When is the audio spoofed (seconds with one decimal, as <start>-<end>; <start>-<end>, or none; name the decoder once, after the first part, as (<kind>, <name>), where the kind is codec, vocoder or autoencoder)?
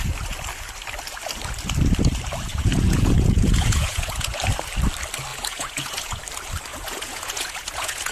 2.5-4.4 (vocoder, Vocos); 5.3-6.2; 6.7-8.1